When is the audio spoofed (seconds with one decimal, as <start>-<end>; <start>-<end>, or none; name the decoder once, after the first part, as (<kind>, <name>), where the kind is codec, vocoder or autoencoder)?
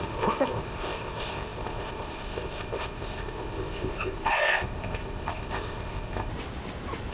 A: 0.0-6.3 (codec, ZipCodec)